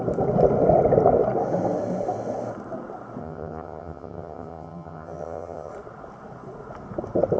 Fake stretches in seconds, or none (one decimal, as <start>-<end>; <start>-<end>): 3.2-5.7